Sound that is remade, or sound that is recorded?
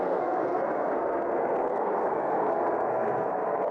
remade